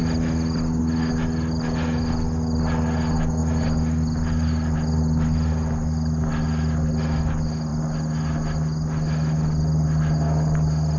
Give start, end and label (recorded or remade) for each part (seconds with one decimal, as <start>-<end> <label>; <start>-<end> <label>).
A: 0.0-11.0 recorded